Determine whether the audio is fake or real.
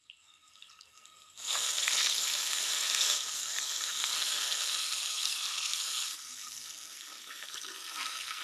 fake